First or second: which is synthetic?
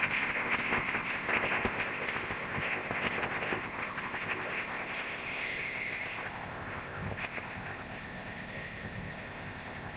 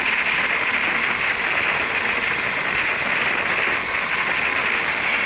first